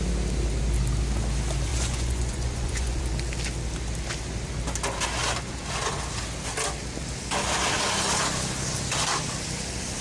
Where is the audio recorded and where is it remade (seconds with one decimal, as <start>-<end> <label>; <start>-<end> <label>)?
0.0-1.7 recorded; 1.7-3.0 remade; 3.0-10.0 recorded